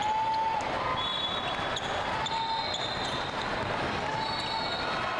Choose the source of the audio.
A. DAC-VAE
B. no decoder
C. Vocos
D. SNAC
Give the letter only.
B